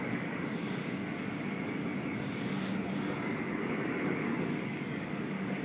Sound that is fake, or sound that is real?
fake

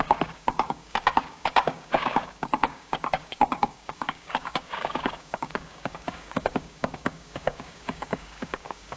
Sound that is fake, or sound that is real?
fake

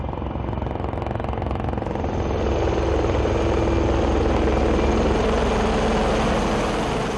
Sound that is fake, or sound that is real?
real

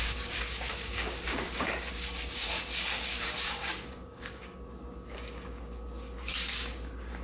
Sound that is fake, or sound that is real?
fake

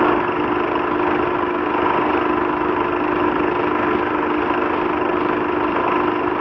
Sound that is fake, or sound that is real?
real